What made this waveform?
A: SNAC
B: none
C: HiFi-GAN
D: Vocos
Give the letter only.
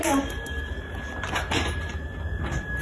B